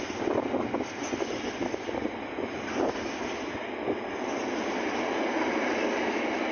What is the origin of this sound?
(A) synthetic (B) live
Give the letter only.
B